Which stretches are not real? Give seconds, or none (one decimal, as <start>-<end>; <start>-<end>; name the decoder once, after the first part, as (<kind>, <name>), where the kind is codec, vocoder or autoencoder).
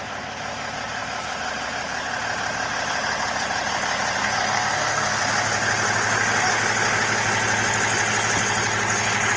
4.2-5.2 (codec, SNAC)